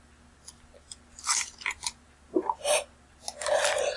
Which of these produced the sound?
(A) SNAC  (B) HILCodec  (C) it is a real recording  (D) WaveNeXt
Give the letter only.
C